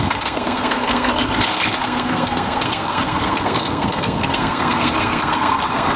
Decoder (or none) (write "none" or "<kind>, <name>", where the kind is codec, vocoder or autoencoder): codec, SNAC